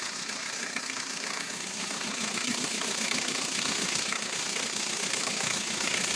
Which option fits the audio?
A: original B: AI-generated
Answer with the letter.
B